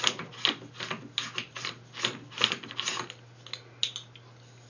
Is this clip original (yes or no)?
yes